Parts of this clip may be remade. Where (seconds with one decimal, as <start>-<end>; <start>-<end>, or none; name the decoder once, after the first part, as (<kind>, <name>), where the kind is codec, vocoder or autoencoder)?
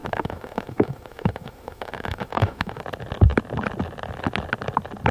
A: 0.0-2.8 (autoencoder, DAC-VAE)